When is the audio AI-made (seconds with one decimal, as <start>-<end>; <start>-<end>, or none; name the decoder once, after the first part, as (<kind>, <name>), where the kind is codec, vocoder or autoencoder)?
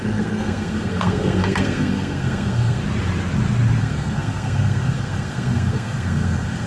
0.0-2.8 (codec, SNAC); 3.8-6.7